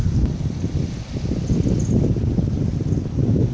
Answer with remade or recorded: recorded